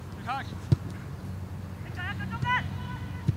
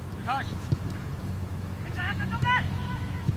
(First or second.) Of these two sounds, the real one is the first